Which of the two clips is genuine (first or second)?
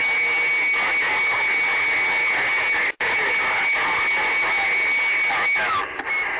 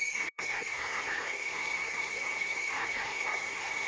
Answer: first